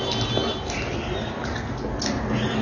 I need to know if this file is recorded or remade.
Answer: recorded